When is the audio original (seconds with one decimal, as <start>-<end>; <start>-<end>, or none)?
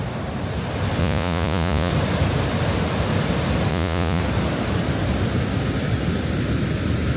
0.0-1.0; 1.9-3.7; 4.2-7.2